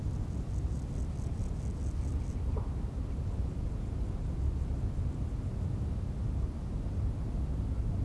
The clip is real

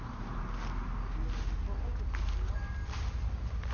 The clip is real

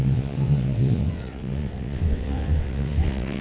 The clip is fake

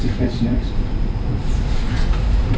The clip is fake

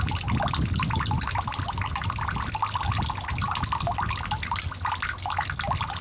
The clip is real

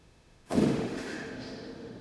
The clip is fake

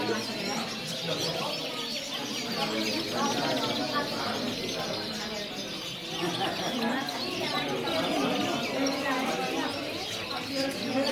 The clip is real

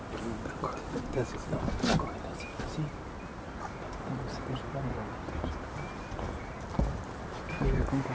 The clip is real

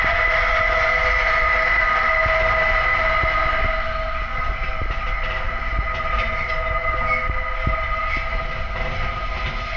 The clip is real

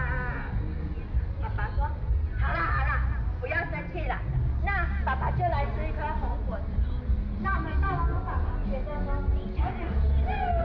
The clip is real